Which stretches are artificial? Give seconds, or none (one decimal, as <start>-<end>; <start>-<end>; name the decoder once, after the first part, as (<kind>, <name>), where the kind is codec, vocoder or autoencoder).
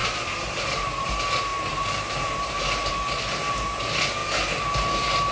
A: 0.0-1.1 (vocoder, BigVGAN v2); 1.5-2.9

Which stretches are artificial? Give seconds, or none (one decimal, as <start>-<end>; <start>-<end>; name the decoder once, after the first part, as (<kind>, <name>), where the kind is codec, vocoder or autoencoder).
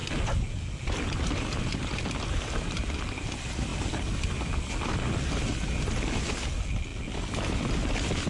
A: none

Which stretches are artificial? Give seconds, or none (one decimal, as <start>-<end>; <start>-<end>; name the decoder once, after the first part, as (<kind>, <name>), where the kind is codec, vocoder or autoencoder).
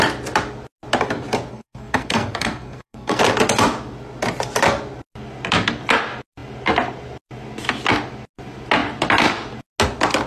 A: 1.5-3.2 (codec, SNAC)